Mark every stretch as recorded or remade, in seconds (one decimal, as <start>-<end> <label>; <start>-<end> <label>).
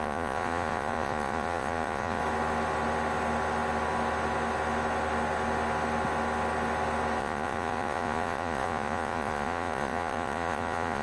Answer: 0.0-2.2 remade; 2.2-7.2 recorded; 7.2-11.0 remade